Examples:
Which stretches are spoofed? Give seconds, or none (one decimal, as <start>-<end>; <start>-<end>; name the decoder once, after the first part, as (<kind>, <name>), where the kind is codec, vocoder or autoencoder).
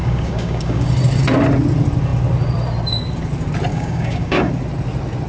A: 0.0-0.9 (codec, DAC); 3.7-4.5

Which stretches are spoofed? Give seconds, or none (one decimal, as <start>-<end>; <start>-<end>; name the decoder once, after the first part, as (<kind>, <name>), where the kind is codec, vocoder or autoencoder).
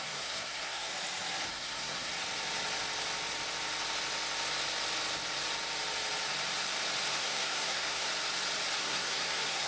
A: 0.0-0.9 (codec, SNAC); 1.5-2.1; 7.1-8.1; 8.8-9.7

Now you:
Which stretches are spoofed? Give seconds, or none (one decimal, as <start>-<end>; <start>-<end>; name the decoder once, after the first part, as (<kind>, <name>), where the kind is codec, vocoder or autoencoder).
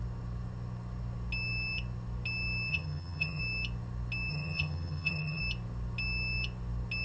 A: 2.7-3.4 (vocoder, HiFi-GAN); 4.3-5.4